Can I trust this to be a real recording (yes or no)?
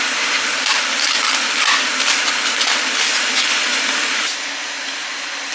yes